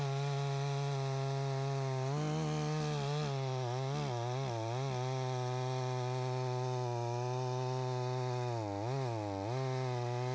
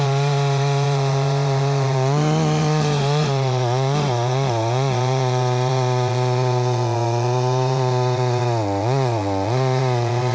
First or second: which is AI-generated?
second